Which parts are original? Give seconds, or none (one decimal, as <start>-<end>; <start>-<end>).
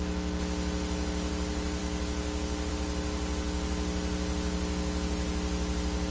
0.0-6.1